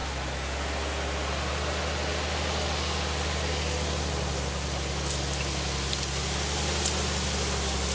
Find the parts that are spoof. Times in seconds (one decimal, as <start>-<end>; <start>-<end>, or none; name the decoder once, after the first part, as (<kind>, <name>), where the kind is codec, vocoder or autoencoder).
none